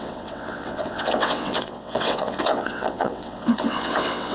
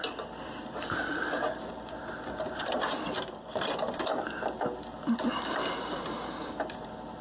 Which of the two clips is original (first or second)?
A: second